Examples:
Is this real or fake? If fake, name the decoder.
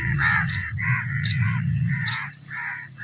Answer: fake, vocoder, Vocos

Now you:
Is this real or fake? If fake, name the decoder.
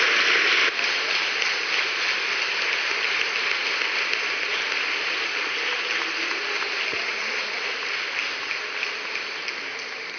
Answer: real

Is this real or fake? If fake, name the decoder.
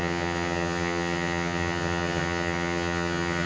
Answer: fake, vocoder, HiFi-GAN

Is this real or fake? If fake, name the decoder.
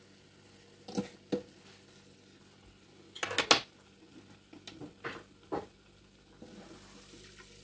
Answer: real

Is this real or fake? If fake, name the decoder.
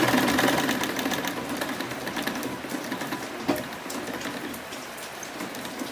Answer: real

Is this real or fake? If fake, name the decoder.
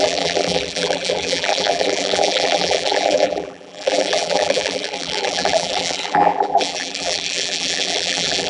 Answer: fake, vocoder, BigVGAN v2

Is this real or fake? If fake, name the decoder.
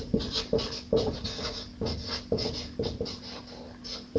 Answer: real